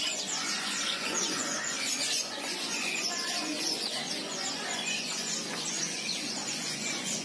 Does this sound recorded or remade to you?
remade